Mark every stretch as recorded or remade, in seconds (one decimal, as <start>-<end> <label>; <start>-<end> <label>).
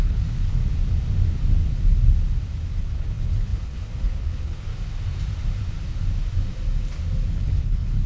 0.0-0.6 remade; 0.6-2.8 recorded; 2.8-4.7 remade; 4.7-7.3 recorded; 7.3-8.1 remade